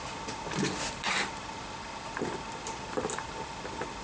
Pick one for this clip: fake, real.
real